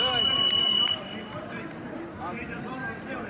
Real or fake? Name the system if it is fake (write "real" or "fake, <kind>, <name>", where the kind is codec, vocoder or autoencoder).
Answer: real